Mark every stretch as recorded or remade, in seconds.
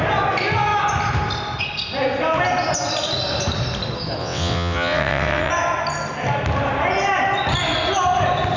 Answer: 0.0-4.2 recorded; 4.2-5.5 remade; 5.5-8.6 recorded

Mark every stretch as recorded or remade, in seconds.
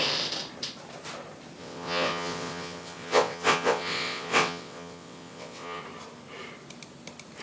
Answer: 0.0-1.6 recorded; 1.6-5.8 remade; 5.8-7.4 recorded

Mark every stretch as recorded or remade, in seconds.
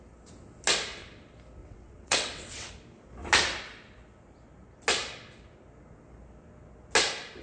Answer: 0.0-1.6 recorded; 1.6-2.7 remade; 2.7-7.4 recorded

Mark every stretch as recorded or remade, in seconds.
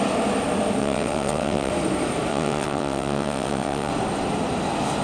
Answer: 0.0-0.8 recorded; 0.8-1.7 remade; 1.7-2.3 recorded; 2.3-3.9 remade; 3.9-5.0 recorded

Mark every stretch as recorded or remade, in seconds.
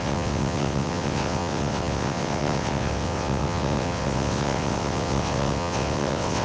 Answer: 0.0-6.4 remade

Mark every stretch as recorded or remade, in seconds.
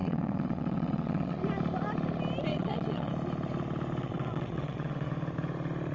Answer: 0.0-1.4 remade; 1.4-2.5 recorded; 2.5-3.1 remade; 3.1-4.0 recorded; 4.0-5.1 remade; 5.1-5.9 recorded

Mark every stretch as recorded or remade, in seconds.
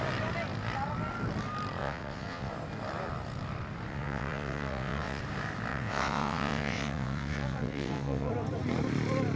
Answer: 0.0-1.8 recorded; 1.8-2.5 remade; 2.5-3.9 recorded; 3.9-5.2 remade; 5.2-5.7 recorded; 5.7-8.3 remade; 8.3-9.4 recorded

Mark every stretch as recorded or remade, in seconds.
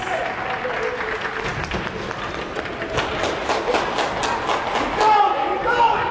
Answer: 0.0-6.1 recorded